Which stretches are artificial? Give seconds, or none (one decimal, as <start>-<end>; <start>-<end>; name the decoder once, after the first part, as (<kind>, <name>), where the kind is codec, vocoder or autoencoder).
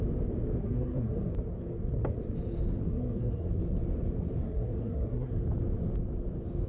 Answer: 0.6-1.3 (codec, SNAC); 2.9-3.5; 4.4-5.3